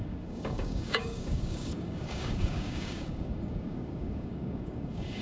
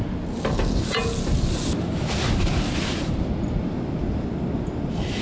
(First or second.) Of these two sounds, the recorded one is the second